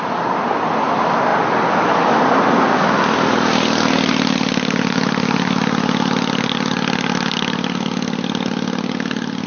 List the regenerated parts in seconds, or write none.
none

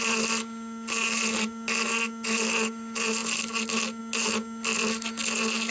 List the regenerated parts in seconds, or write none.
none

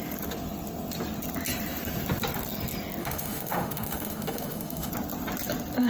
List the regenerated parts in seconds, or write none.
3.0-4.9 (autoencoder, DAC-VAE)

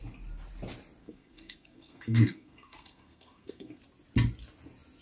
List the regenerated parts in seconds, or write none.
1.0-3.8 (codec, SNAC)

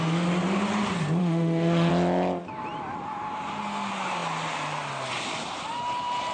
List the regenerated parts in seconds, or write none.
1.2-1.9 (autoencoder, DAC-VAE)

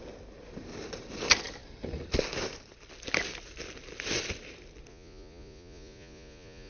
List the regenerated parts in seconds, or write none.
4.9-6.7 (vocoder, Vocos)